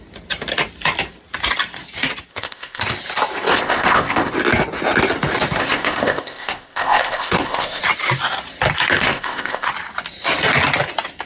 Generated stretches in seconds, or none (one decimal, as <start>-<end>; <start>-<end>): 2.3-2.8; 3.5-4.3; 5.6-7.8; 9.0-9.7